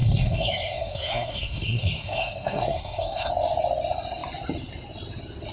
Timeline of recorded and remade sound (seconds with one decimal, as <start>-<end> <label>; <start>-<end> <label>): 0.0-3.3 remade; 3.3-5.5 recorded